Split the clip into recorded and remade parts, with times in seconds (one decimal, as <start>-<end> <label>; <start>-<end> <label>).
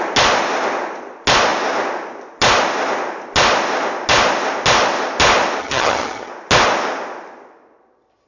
0.0-5.6 recorded; 5.6-6.3 remade; 6.3-8.3 recorded